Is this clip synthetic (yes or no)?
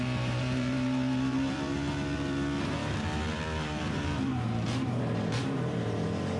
yes